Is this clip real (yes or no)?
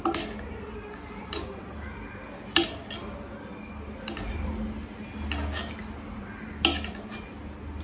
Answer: yes